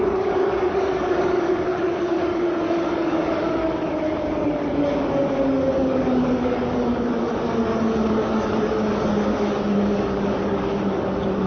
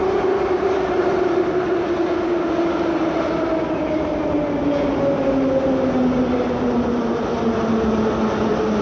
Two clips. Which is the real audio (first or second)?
second